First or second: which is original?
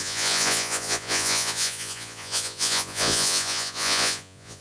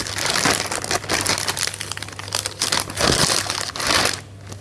second